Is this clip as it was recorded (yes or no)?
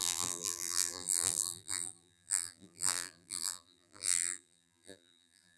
no